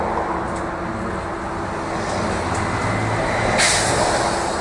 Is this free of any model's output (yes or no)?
yes